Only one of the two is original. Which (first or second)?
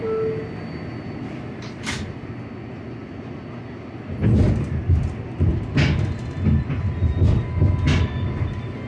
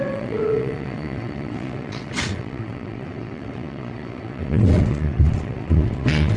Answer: first